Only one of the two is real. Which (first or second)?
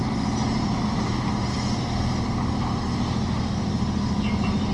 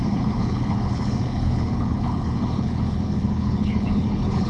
first